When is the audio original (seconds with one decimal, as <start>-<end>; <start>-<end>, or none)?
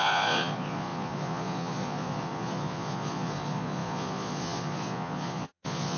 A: none